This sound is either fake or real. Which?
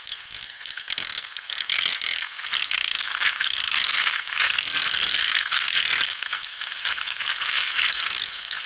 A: fake